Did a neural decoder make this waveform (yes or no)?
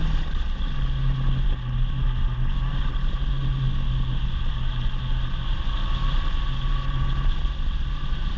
no